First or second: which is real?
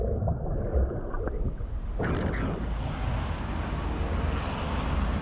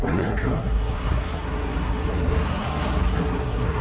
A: first